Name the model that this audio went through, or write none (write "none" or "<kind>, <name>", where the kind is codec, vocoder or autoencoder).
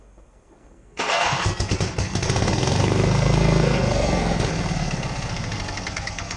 codec, SNAC